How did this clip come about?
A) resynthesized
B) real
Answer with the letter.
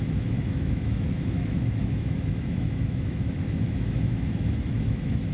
A